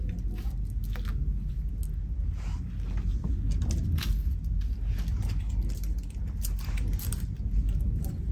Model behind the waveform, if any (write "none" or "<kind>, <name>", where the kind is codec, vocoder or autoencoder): none